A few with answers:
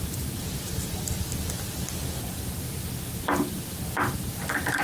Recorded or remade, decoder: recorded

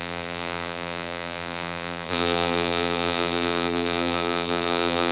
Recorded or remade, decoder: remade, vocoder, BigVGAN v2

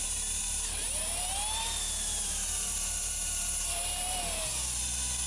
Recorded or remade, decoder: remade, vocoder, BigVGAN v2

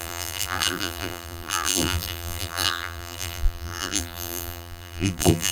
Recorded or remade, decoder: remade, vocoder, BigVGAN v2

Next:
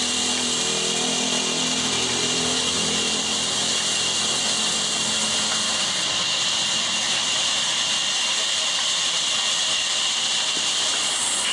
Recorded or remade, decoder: recorded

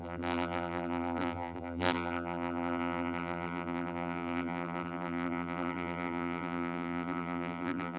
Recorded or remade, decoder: remade, vocoder, BigVGAN v2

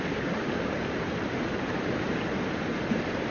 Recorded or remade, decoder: remade, vocoder, BigVGAN v2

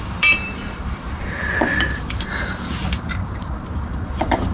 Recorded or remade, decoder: remade, vocoder, BigVGAN v2